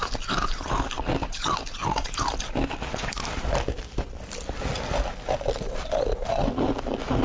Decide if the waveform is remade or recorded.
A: recorded